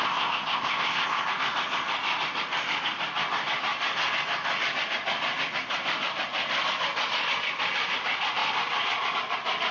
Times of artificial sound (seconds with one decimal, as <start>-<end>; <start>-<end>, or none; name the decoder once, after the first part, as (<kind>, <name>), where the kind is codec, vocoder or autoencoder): 0.0-1.3 (codec, ZipCodec)